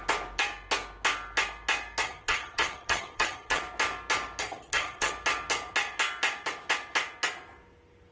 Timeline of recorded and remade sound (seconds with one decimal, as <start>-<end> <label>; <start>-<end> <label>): 0.0-2.0 recorded; 2.0-3.6 remade; 3.6-4.5 recorded; 4.5-5.1 remade; 5.1-8.1 recorded